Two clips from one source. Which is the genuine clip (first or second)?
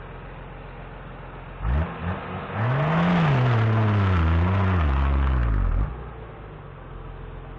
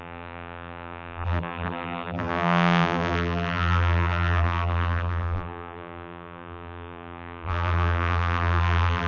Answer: first